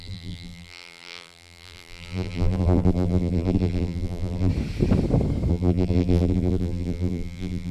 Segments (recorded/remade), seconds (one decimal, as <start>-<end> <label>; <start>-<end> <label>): 0.0-4.5 remade; 4.5-5.5 recorded; 5.5-7.7 remade